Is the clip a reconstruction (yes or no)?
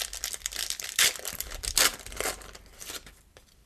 yes